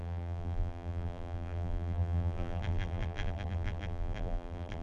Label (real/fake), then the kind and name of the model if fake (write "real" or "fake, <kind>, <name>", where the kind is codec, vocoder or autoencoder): fake, vocoder, BigVGAN v2